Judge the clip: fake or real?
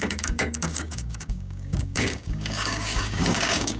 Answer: fake